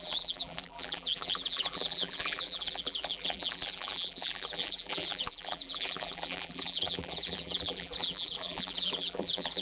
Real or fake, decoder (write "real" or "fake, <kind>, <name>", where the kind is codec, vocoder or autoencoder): fake, vocoder, BigVGAN v2